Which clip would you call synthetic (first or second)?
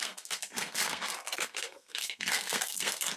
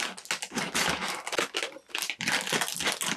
first